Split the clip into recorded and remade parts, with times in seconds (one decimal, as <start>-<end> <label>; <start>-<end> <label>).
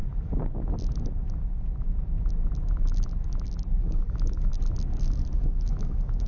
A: 0.0-3.8 recorded; 3.8-4.5 remade; 4.5-5.0 recorded; 5.0-6.3 remade